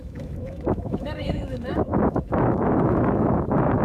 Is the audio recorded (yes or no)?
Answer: no